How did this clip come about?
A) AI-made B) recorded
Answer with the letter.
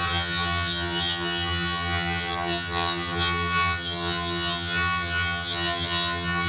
A